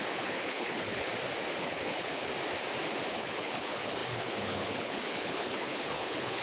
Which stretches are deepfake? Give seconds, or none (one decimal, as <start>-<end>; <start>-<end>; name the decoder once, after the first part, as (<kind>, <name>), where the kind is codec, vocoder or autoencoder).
0.0-1.1 (codec, HILCodec); 1.6-2.3; 3.1-6.4